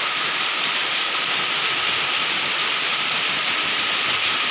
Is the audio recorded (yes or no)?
yes